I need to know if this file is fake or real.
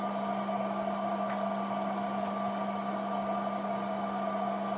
real